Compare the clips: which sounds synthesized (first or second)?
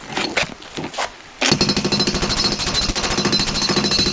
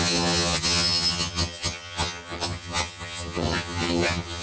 second